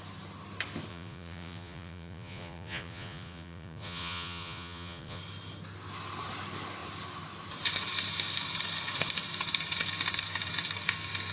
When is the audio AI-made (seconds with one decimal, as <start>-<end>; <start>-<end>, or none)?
0.9-5.2